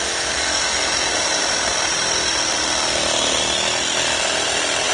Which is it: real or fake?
real